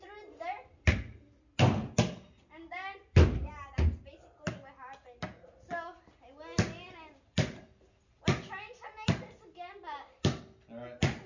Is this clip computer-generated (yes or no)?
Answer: no